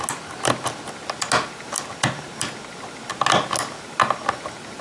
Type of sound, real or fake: real